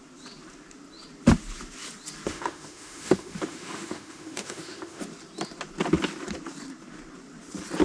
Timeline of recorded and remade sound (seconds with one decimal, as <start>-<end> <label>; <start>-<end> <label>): 0.0-2.3 recorded; 2.3-5.0 remade; 5.0-7.8 recorded